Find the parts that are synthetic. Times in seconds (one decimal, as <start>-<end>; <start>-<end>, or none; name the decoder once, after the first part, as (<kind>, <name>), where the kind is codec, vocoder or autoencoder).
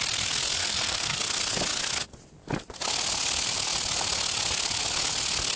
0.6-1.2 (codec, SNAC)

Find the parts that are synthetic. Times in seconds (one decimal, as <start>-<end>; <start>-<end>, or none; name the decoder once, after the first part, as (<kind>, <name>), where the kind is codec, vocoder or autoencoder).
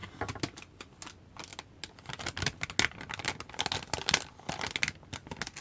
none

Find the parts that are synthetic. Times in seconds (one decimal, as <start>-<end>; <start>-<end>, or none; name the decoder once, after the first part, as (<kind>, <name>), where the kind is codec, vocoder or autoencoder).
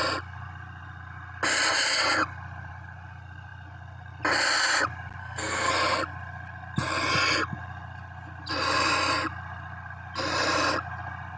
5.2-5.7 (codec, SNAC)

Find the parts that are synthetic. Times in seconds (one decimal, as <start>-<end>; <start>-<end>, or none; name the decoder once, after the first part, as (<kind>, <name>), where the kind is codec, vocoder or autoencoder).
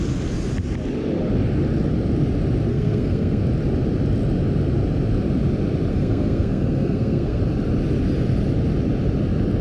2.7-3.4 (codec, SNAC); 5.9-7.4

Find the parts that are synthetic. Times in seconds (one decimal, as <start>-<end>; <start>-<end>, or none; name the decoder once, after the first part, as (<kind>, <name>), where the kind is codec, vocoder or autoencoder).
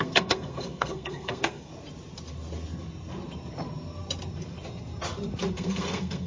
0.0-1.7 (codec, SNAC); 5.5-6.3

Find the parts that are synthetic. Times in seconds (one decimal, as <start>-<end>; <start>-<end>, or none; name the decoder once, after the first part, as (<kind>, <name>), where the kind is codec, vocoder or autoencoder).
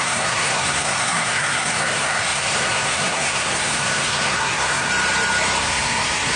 0.0-4.9 (codec, SNAC); 5.6-6.4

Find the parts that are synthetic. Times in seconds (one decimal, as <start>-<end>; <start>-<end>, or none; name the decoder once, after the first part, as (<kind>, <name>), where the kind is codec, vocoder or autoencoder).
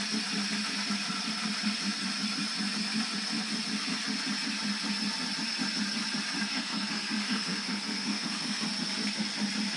6.5-8.6 (codec, SNAC)